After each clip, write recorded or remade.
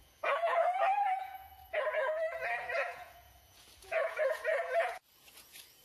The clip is remade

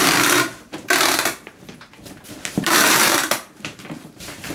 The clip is remade